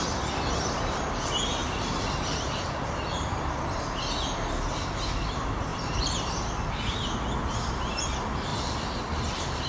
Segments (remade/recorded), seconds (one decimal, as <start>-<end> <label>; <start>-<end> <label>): 0.0-5.7 recorded; 5.7-6.3 remade; 6.3-8.5 recorded; 8.5-9.7 remade